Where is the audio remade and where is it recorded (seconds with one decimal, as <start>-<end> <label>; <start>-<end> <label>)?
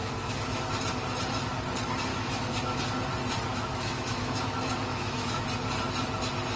0.0-0.7 remade; 0.7-2.1 recorded; 2.1-2.8 remade; 2.8-3.5 recorded; 3.5-5.4 remade; 5.4-6.6 recorded